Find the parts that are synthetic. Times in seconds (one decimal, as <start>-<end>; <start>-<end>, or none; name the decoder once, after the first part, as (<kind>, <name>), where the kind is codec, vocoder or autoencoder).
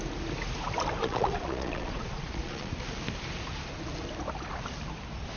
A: 1.0-2.7 (vocoder, Vocos)